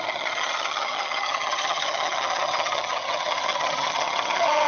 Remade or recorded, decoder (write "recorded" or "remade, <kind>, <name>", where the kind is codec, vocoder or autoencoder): remade, vocoder, HiFi-GAN